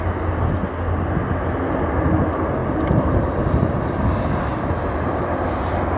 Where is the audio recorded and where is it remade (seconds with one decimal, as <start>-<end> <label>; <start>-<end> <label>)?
0.0-6.0 recorded